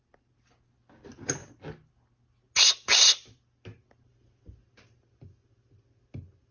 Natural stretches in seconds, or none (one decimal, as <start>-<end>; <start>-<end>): 0.0-6.5